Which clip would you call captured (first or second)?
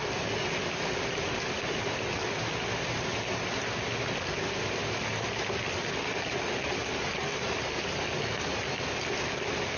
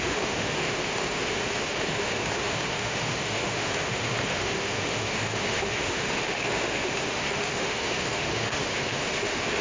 first